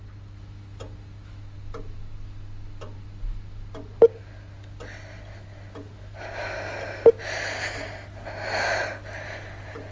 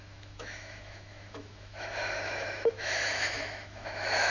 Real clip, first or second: first